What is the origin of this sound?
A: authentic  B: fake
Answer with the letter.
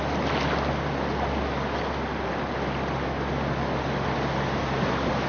A